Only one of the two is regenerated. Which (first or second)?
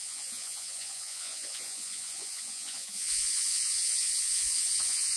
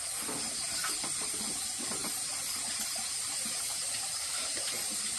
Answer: first